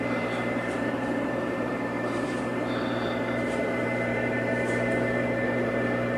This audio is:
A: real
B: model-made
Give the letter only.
B